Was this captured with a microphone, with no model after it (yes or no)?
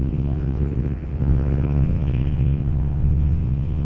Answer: no